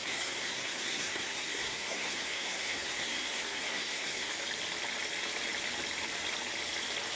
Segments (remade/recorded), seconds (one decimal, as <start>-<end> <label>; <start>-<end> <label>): 0.0-4.3 remade; 4.3-7.2 recorded